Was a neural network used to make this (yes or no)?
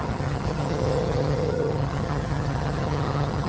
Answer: yes